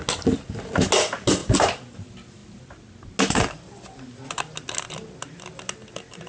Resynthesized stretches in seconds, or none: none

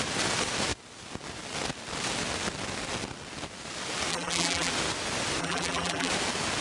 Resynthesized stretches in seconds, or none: 4.1-4.7 (vocoder, BigVGAN v2); 5.4-6.1